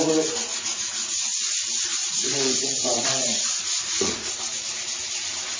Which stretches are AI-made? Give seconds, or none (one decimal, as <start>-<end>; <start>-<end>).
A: 0.5-1.5; 2.0-4.3